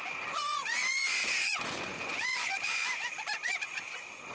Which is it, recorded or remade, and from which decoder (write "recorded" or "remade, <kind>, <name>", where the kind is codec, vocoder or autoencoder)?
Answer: remade, vocoder, Vocos